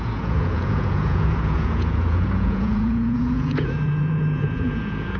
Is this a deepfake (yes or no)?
yes